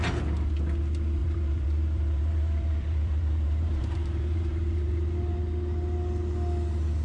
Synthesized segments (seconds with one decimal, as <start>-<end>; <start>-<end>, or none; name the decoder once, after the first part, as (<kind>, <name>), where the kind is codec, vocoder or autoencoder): 1.2-5.4 (vocoder, BigVGAN v2)